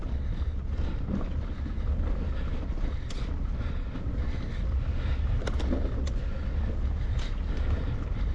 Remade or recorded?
recorded